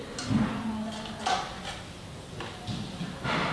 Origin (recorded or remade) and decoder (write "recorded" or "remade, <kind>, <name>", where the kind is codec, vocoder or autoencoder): recorded